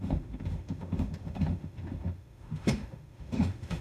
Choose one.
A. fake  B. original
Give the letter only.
A